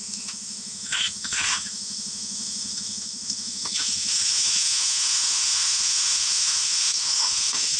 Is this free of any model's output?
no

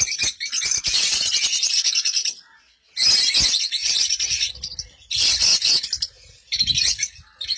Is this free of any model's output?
yes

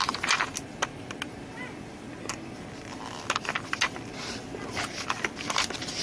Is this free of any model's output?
yes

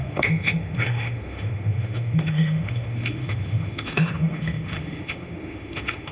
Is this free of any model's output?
no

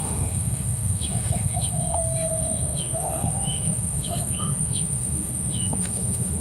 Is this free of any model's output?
no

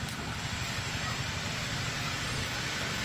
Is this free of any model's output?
yes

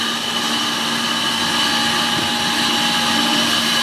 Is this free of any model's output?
yes